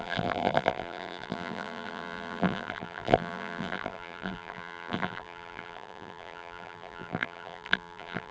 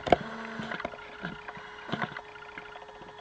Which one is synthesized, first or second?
first